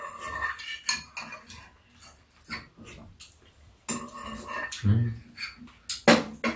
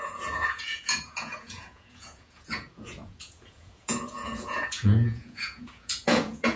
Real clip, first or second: first